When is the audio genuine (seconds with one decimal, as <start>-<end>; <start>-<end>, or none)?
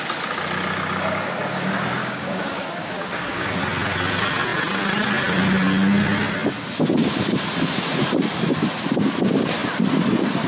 0.0-2.0; 3.6-10.5